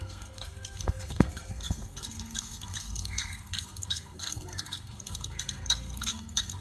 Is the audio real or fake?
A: fake